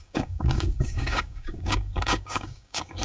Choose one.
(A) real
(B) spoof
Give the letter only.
B